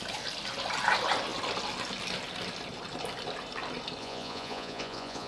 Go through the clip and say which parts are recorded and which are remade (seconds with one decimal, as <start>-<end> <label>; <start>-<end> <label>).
0.0-4.0 recorded; 4.0-5.3 remade